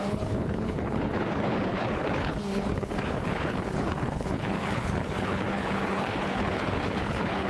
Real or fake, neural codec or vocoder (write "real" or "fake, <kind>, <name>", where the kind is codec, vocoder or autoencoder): fake, codec, HILCodec